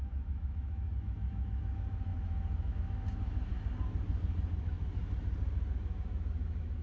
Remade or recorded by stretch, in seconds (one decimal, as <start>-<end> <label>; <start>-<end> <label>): 0.0-3.5 remade; 3.5-4.6 recorded; 4.6-5.0 remade; 5.0-5.7 recorded; 5.7-6.8 remade